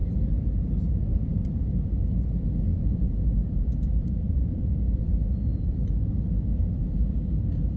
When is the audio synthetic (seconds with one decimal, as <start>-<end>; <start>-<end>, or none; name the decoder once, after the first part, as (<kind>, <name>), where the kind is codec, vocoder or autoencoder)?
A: 0.0-0.7 (vocoder, BigVGAN v2); 1.1-1.6; 2.7-6.1